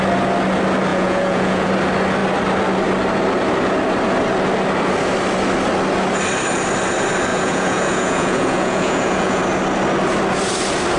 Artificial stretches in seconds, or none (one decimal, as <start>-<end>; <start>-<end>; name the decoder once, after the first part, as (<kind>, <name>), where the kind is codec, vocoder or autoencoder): 0.9-1.7 (vocoder, Vocos); 7.3-9.4